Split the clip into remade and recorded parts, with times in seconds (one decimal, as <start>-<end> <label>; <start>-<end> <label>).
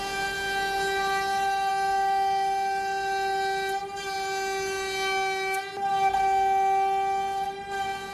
0.0-8.1 recorded